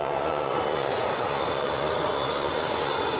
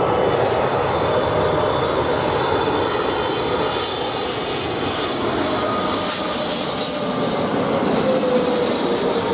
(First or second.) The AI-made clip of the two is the first